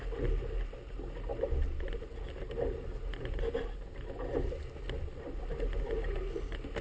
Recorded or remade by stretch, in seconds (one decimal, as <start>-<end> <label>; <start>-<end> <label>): 0.0-6.8 recorded